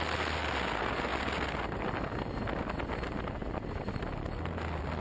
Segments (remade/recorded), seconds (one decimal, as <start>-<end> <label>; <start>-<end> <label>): 0.0-5.0 recorded